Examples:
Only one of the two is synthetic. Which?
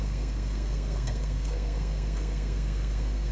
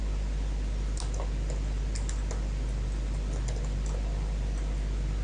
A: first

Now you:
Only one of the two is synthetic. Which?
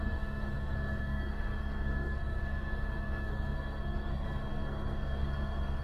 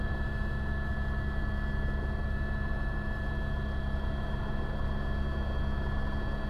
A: first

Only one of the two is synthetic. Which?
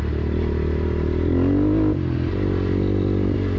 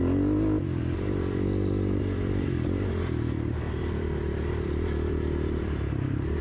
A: second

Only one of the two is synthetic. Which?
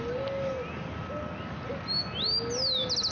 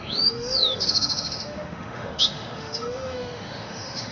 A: second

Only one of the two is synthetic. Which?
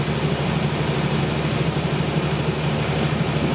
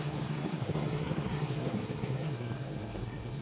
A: second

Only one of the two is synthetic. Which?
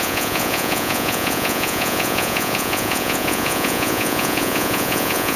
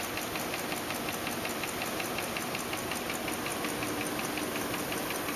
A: first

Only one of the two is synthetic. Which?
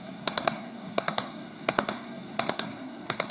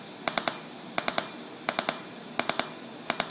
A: first